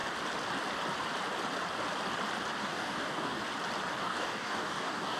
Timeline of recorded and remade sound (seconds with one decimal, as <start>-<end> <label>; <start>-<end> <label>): 0.0-2.6 recorded; 2.6-3.4 remade; 3.4-4.0 recorded; 4.0-5.2 remade